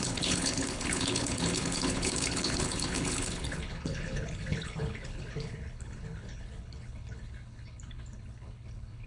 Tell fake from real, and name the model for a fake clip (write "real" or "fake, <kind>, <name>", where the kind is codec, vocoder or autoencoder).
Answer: fake, codec, HILCodec